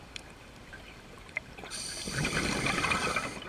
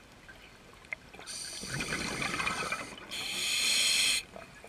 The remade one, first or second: first